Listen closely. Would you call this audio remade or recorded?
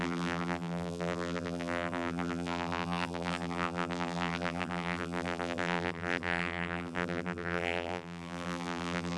remade